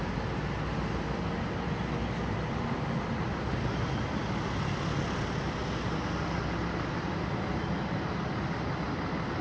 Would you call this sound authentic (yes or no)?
yes